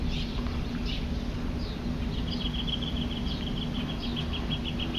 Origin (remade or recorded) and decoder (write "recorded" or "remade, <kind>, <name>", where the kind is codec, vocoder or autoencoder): recorded